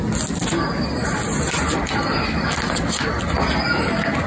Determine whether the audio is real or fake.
real